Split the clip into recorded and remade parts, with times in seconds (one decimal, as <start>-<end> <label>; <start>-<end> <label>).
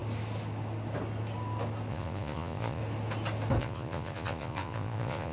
0.0-1.9 recorded; 1.9-2.8 remade; 2.8-3.6 recorded; 3.6-5.3 remade